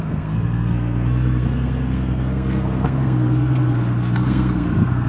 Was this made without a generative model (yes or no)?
no